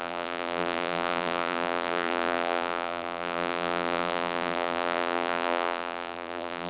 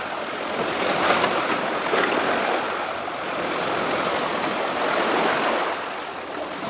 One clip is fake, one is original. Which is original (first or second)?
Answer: second